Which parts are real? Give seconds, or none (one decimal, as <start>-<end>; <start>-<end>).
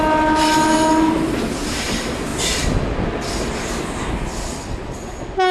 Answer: 0.0-5.5